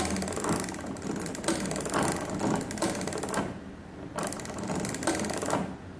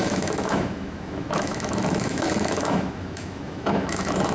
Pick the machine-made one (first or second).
second